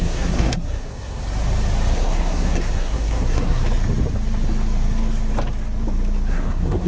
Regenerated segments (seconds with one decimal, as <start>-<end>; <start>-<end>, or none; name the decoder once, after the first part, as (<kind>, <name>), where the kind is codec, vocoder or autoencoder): 0.0-1.2 (codec, SNAC); 1.9-3.6; 6.3-6.9